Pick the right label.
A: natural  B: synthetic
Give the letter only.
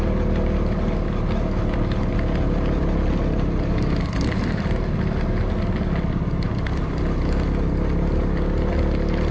A